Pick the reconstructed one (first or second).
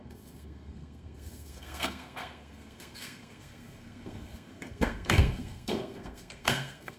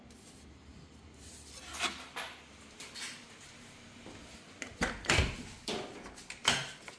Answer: first